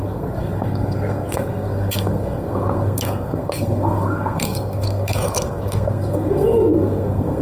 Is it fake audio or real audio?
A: fake